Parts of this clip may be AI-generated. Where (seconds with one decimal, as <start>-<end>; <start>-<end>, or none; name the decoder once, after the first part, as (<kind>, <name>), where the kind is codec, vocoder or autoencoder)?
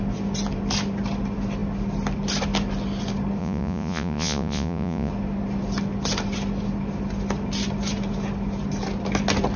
3.4-5.1 (vocoder, Vocos)